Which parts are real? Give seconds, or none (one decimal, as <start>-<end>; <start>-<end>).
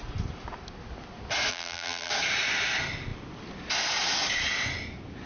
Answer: 0.0-1.5; 2.1-5.3